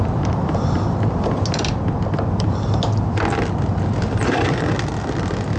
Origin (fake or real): real